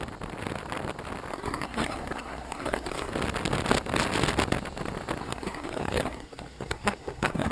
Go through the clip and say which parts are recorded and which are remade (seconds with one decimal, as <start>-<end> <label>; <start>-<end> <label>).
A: 0.0-1.3 recorded; 1.3-3.1 remade; 3.1-5.2 recorded; 5.2-7.5 remade